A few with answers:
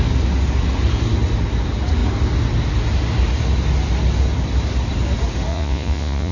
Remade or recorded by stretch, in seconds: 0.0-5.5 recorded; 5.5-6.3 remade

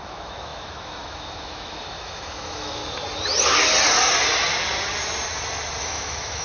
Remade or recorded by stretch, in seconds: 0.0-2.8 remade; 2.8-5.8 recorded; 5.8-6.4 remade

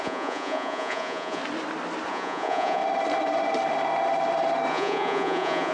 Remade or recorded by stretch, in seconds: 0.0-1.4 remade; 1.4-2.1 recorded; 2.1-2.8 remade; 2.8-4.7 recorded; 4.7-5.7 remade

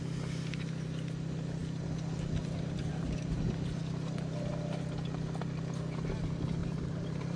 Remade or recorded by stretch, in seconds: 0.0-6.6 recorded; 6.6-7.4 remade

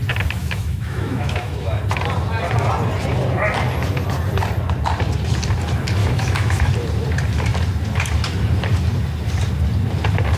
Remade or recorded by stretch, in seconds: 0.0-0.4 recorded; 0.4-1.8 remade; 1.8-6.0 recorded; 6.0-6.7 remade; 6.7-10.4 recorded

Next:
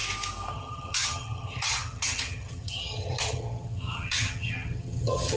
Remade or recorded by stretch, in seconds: 0.0-0.5 recorded; 0.5-5.4 remade

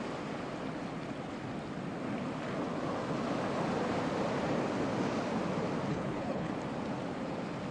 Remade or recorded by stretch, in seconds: 0.0-5.9 recorded; 5.9-6.5 remade; 6.5-7.7 recorded